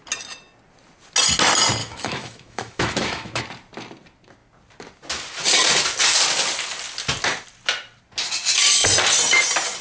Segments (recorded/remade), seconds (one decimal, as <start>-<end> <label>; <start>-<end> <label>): 0.0-1.8 recorded; 1.8-3.4 remade; 3.4-9.8 recorded